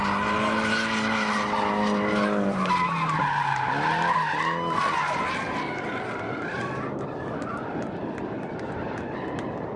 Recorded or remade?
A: recorded